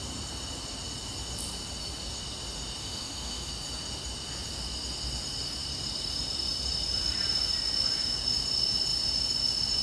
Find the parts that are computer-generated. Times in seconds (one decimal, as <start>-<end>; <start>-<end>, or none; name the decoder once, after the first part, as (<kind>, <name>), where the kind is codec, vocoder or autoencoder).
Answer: 2.8-3.5 (autoencoder, DAC-VAE)